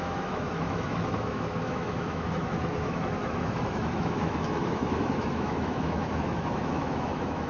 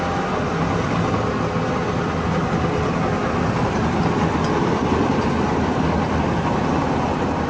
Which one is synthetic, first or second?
first